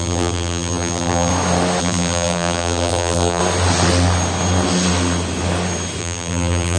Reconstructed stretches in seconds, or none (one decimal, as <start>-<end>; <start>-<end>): 0.0-1.3; 1.8-3.4; 6.0-6.8